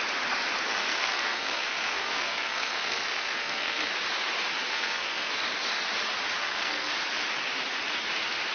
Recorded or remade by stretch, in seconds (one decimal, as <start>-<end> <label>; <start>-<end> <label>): 0.0-0.7 recorded; 0.7-3.9 remade; 3.9-4.7 recorded; 4.7-5.3 remade; 5.3-6.4 recorded; 6.4-6.9 remade; 6.9-8.5 recorded